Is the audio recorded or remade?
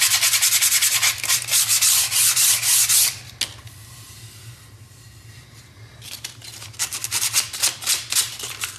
recorded